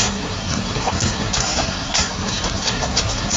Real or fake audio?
fake